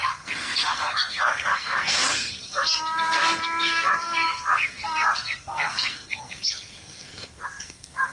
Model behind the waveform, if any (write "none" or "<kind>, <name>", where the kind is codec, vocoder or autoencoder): codec, SNAC